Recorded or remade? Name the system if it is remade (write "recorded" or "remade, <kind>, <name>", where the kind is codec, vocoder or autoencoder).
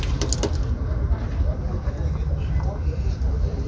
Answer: recorded